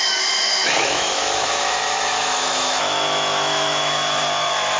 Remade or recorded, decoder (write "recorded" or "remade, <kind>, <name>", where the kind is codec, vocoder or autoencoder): remade, autoencoder, DAC-VAE